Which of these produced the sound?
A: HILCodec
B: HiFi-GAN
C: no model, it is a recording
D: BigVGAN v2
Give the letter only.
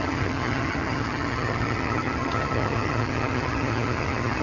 B